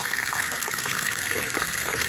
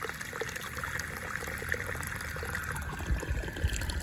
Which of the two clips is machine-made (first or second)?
first